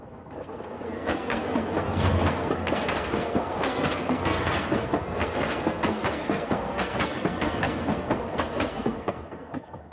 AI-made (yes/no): yes